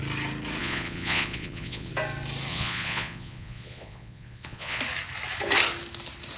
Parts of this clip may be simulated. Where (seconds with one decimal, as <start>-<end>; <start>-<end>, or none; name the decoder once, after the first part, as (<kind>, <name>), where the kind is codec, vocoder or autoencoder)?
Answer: 0.6-1.9 (vocoder, Vocos); 2.5-4.8